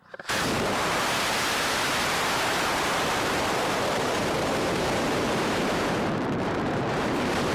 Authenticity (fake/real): fake